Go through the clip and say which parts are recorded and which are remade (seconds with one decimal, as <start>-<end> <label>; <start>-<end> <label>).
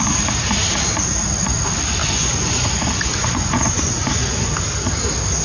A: 0.0-2.0 recorded; 2.0-4.5 remade; 4.5-5.4 recorded